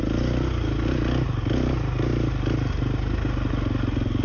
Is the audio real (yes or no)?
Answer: yes